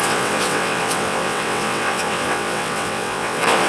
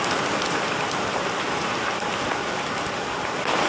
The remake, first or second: first